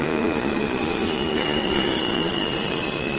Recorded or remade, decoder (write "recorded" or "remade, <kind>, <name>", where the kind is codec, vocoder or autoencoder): remade, vocoder, Vocos